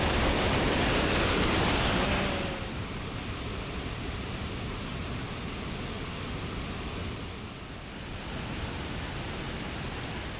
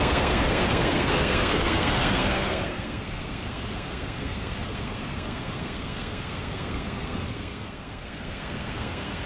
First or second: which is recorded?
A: first